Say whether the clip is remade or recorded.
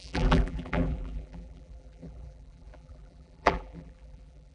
remade